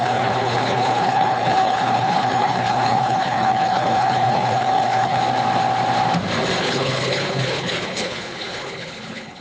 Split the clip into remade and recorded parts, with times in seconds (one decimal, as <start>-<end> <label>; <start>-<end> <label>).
0.0-5.2 remade; 5.2-6.6 recorded; 6.6-9.4 remade